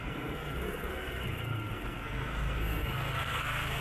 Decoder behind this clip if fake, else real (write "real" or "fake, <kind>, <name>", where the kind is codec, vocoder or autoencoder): fake, codec, SNAC